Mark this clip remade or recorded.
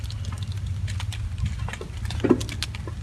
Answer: recorded